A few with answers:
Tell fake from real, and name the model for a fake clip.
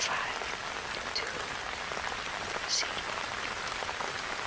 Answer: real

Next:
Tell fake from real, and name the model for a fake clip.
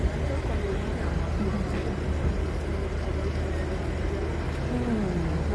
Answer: real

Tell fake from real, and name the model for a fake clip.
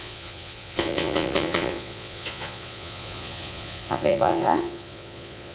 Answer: fake, vocoder, Vocos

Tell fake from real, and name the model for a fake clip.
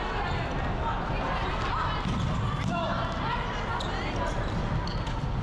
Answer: real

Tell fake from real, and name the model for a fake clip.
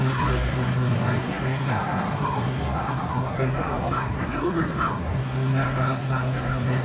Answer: fake, codec, SNAC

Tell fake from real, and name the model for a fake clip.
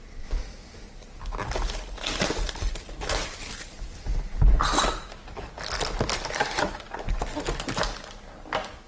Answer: real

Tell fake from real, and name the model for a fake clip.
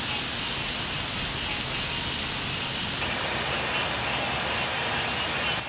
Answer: real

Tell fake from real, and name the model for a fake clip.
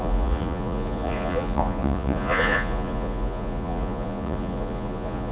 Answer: fake, vocoder, Vocos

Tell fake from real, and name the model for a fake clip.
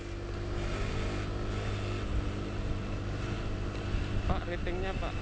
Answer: real